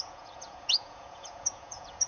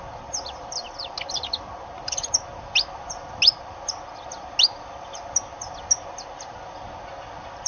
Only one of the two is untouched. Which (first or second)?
second